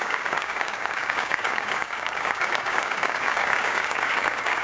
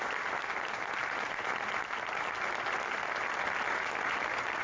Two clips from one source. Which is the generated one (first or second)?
first